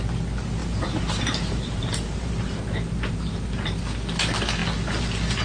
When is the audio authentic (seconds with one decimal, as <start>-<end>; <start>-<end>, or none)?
0.0-0.6; 3.8-5.4